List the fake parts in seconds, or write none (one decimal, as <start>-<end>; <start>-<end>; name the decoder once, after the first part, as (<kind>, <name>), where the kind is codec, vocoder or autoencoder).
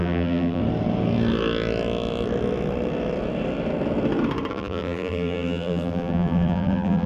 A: 0.0-0.6 (vocoder, BigVGAN v2); 4.5-7.1